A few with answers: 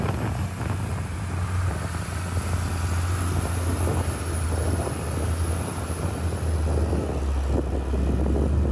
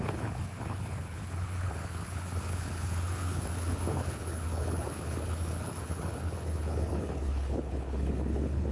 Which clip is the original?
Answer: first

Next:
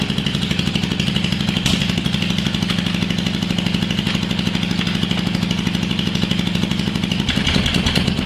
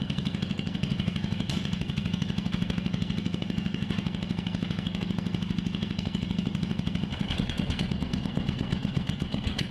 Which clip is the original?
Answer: first